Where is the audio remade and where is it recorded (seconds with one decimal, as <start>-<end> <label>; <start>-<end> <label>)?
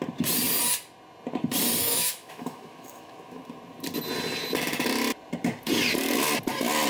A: 0.0-1.8 recorded; 1.8-3.4 remade; 3.4-6.9 recorded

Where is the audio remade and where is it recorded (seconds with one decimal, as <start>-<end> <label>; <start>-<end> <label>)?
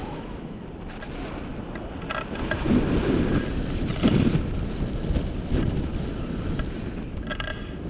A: 0.0-0.6 remade; 0.6-7.9 recorded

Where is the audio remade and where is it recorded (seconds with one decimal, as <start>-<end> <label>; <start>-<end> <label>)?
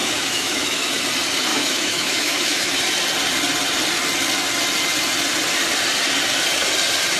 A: 0.0-0.9 remade; 0.9-1.5 recorded; 1.5-2.8 remade; 2.8-7.2 recorded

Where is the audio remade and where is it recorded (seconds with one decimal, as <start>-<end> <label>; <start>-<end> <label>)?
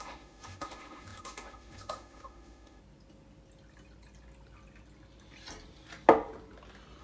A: 0.0-2.8 remade; 2.8-7.0 recorded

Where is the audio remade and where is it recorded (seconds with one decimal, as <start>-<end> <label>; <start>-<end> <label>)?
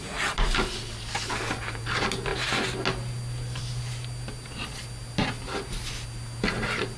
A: 0.0-7.0 recorded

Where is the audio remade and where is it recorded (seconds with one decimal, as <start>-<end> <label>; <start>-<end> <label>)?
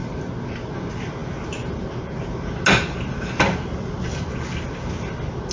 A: 0.0-5.5 recorded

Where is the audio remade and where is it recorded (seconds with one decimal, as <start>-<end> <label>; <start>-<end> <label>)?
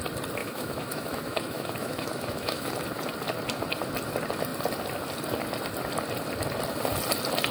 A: 0.0-0.4 recorded; 0.4-2.7 remade; 2.7-7.5 recorded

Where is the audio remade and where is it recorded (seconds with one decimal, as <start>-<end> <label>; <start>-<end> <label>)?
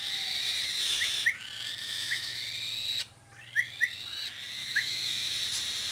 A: 0.0-1.8 recorded; 1.8-2.4 remade; 2.4-4.6 recorded; 4.6-5.3 remade; 5.3-5.9 recorded